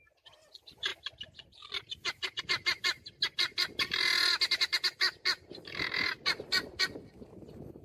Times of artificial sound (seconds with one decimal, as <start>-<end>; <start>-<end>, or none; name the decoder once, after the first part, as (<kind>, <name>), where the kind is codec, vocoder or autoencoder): none